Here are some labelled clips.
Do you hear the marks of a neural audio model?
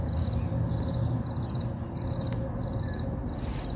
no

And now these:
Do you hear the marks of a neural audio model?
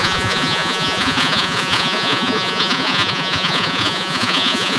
yes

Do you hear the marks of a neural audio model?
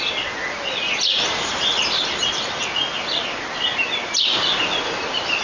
no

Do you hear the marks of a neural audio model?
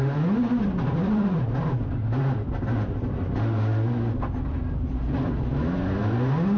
no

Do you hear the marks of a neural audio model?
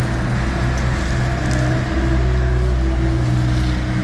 no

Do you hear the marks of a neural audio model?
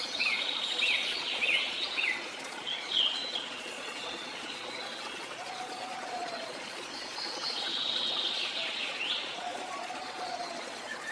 yes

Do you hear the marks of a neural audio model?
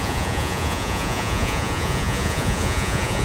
yes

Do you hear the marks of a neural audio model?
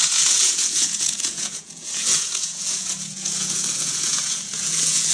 yes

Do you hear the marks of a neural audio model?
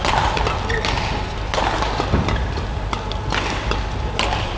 no